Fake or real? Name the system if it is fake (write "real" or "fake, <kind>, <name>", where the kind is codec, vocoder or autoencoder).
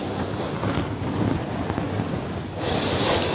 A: real